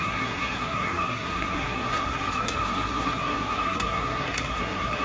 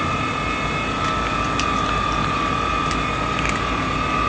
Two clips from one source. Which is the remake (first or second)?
first